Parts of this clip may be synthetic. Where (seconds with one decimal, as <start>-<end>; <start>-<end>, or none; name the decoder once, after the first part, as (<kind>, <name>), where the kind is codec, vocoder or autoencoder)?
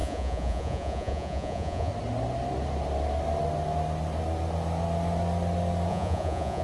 0.0-1.9 (vocoder, Vocos); 5.9-6.6